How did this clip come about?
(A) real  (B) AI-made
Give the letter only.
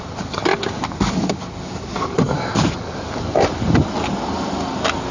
A